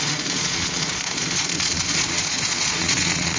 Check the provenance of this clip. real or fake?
fake